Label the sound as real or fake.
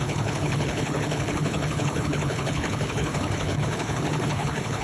fake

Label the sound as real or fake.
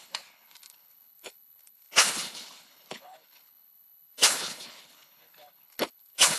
fake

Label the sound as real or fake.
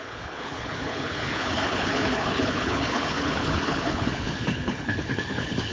fake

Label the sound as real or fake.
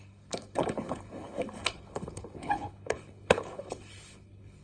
fake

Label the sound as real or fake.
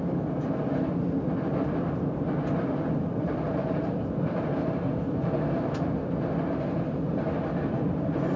real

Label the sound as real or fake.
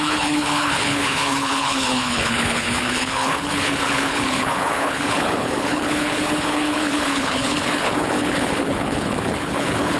fake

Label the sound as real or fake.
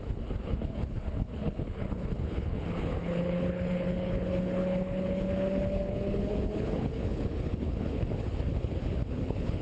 fake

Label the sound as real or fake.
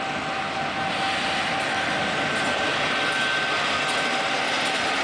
real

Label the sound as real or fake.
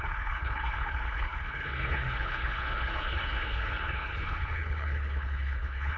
fake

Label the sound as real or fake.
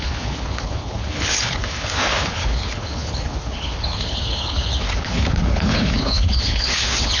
fake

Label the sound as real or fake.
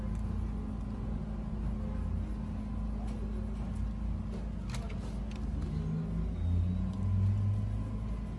real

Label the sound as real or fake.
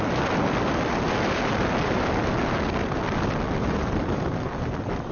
real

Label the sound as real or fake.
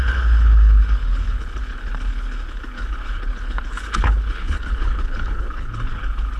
fake